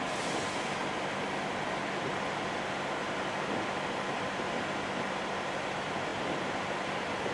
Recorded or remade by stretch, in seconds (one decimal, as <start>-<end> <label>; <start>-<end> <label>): 0.0-7.3 recorded